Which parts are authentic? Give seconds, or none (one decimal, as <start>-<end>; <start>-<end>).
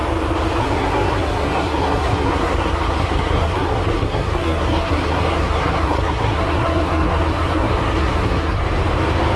0.0-0.6; 8.6-9.4